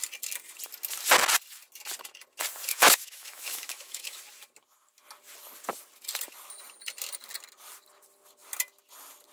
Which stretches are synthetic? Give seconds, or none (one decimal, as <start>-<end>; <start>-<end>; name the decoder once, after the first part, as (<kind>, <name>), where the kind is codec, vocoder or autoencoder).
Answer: 2.7-4.2 (autoencoder, DAC-VAE)